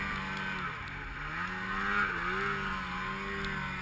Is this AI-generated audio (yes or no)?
no